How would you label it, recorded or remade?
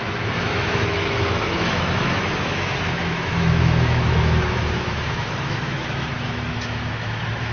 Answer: remade